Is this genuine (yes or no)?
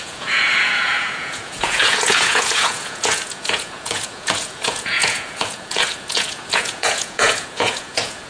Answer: no